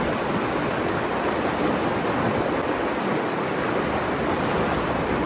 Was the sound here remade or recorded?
recorded